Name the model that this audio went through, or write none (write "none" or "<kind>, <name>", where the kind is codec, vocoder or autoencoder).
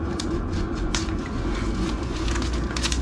vocoder, Vocos